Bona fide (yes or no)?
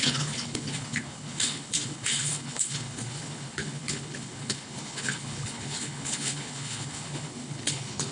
no